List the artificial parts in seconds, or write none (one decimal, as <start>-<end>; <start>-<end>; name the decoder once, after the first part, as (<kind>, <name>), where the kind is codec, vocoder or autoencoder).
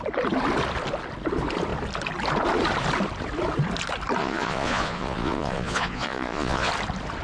4.2-6.7 (vocoder, Vocos)